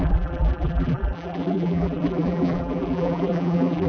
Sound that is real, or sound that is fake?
fake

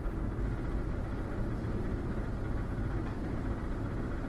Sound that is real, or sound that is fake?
real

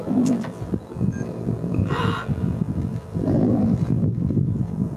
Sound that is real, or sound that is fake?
fake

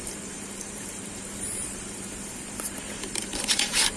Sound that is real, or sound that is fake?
fake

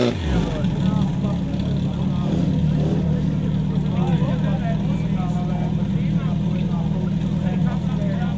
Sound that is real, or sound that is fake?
real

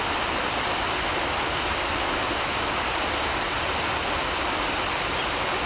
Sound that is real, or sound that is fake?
real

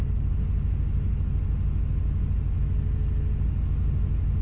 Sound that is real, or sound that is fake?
real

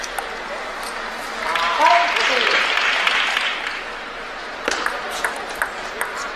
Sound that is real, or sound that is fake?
fake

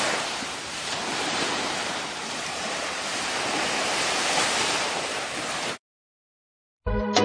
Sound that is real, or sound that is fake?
fake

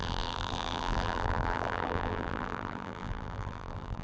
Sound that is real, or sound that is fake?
fake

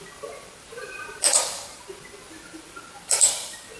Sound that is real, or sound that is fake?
fake